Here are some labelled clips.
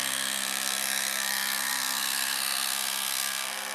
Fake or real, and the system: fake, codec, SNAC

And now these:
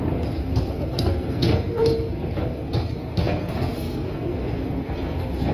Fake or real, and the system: fake, codec, SNAC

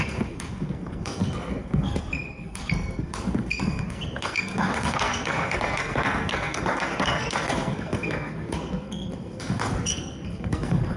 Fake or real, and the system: fake, codec, SNAC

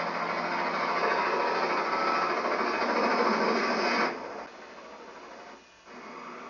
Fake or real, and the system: real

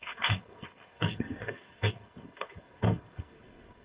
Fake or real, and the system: fake, codec, SNAC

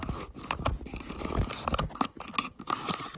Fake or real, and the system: real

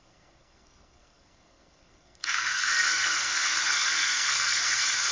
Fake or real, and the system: fake, codec, SNAC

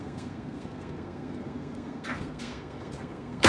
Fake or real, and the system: fake, codec, SNAC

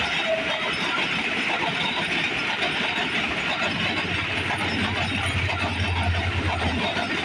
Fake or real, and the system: real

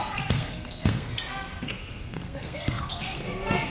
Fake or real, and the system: fake, codec, SNAC